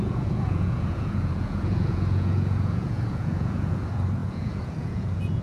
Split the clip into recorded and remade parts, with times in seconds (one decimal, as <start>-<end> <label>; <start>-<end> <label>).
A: 0.0-5.4 remade